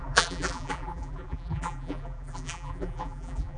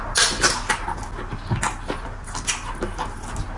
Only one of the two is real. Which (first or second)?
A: second